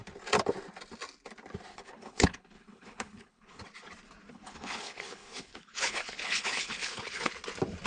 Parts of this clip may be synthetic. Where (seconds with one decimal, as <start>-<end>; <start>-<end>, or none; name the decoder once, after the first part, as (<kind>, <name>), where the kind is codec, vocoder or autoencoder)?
1.7-3.6 (codec, HILCodec); 4.3-7.3